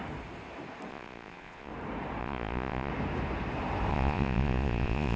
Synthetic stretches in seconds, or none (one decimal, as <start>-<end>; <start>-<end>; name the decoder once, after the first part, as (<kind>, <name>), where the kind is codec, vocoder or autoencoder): 0.9-1.7 (vocoder, Vocos); 2.2-2.9; 3.9-5.2